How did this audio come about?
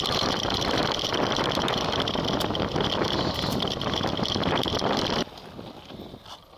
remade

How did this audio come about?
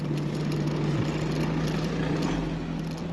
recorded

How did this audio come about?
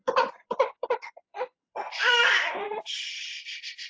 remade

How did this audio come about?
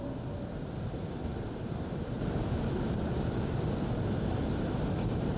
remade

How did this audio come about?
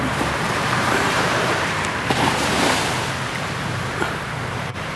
remade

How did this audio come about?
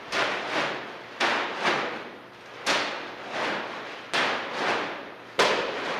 recorded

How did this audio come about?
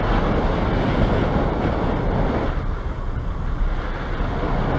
recorded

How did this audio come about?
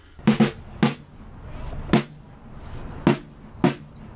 recorded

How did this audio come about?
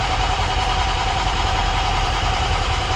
remade